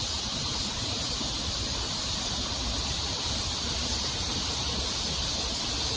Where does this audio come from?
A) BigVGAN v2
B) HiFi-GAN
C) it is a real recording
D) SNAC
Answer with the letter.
C